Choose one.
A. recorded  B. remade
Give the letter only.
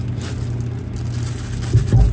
A